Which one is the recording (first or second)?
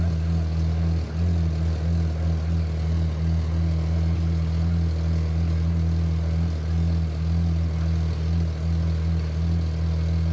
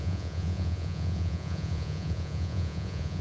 first